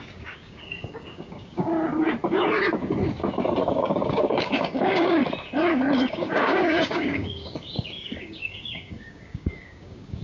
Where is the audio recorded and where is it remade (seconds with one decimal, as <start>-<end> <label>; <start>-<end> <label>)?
0.0-1.7 remade; 1.7-3.7 recorded; 3.7-5.2 remade; 5.2-6.1 recorded; 6.1-10.2 remade